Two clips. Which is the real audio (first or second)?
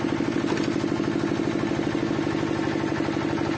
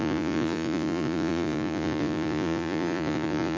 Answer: first